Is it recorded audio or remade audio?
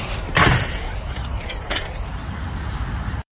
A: remade